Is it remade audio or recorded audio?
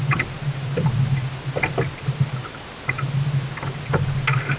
recorded